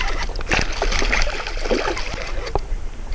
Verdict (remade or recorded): recorded